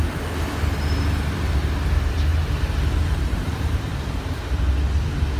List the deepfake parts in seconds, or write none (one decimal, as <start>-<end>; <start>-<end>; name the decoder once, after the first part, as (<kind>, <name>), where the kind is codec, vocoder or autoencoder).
2.3-4.6 (vocoder, BigVGAN v2)